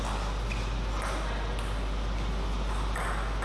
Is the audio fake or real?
real